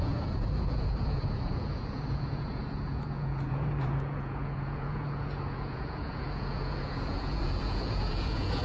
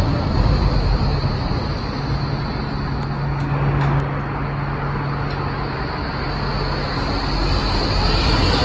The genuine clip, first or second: second